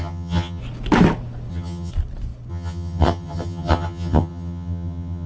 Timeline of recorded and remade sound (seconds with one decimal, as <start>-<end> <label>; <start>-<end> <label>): 0.0-0.6 remade; 0.6-1.5 recorded; 1.5-1.9 remade; 1.9-2.5 recorded; 2.5-5.3 remade